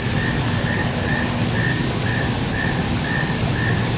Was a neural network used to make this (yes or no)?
no